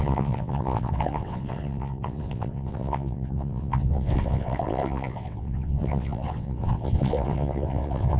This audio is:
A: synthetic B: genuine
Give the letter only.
A